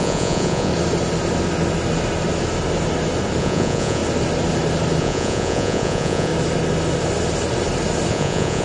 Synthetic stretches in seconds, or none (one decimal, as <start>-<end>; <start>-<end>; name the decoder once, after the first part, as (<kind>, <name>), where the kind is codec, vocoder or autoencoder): 0.0-0.7 (vocoder, Vocos); 3.4-4.0; 5.0-6.3; 8.1-8.6